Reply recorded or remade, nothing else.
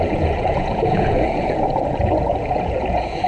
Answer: remade